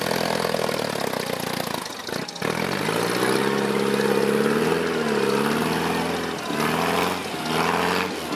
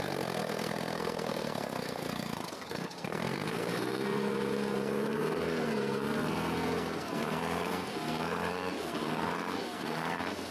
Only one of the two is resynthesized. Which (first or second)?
second